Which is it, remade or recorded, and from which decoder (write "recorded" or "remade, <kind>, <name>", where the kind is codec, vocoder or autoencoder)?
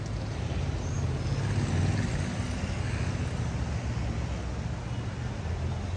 recorded